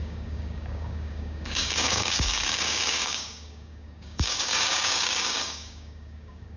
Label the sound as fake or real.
fake